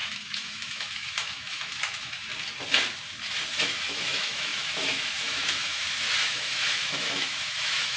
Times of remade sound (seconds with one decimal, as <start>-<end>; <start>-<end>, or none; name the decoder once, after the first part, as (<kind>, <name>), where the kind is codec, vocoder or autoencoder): 0.0-2.3 (autoencoder, DAC-VAE); 3.5-8.0